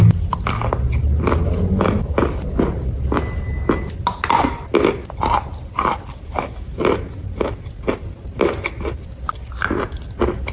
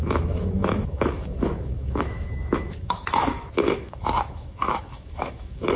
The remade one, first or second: second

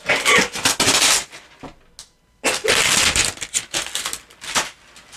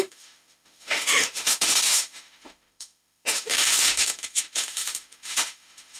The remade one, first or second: second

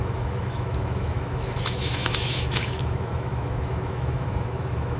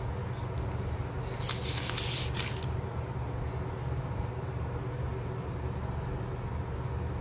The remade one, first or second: first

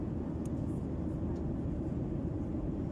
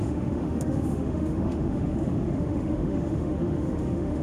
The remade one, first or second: second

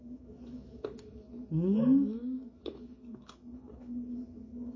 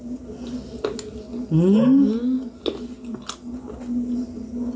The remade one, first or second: first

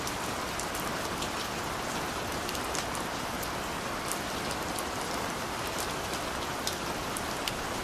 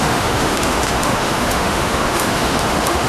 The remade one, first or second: second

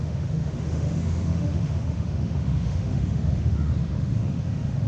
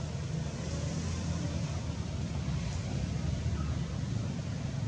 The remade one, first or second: first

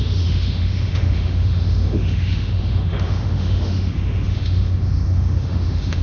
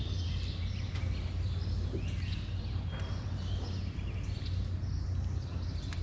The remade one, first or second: first